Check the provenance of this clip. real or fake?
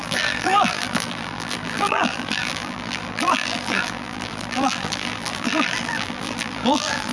fake